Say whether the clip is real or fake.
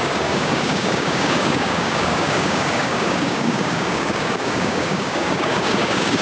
fake